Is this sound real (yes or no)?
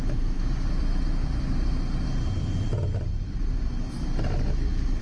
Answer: yes